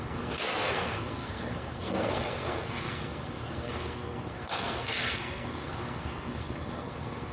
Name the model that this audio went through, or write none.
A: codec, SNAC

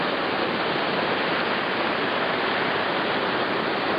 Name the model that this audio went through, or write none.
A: none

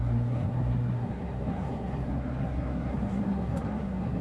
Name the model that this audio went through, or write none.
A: codec, SNAC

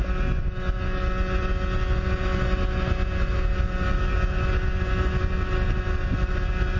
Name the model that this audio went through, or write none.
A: none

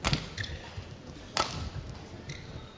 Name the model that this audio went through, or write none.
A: none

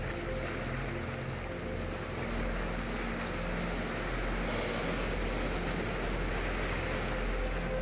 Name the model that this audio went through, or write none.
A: none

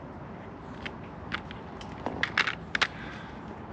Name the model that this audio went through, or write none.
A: none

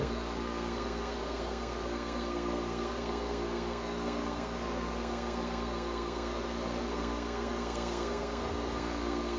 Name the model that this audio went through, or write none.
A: codec, SNAC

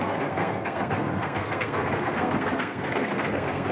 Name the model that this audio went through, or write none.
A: codec, SNAC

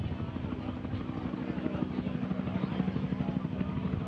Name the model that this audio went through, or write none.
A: none